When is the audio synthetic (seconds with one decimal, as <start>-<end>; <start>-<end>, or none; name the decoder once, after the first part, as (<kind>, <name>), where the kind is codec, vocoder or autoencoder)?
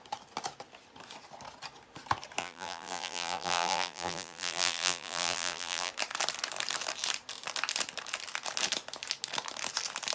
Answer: 2.4-5.9 (vocoder, BigVGAN v2)